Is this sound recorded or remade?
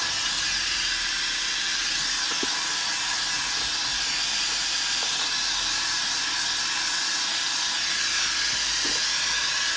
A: recorded